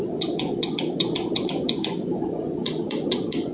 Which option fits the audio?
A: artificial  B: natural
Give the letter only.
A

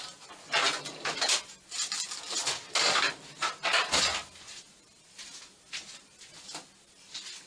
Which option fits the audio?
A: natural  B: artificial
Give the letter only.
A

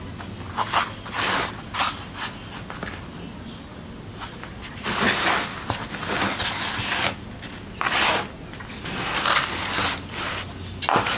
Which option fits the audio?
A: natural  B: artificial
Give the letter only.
A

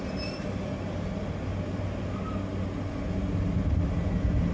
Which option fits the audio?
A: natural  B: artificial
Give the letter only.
A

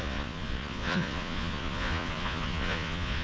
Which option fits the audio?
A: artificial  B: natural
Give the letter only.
A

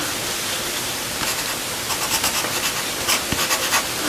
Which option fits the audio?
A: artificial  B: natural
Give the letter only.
B